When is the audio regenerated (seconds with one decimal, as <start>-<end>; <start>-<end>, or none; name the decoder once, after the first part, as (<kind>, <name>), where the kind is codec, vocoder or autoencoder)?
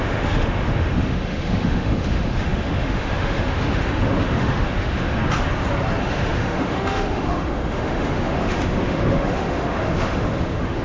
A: 0.0-5.2 (autoencoder, DAC-VAE); 6.0-10.8